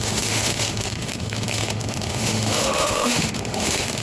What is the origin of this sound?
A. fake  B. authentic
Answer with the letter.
A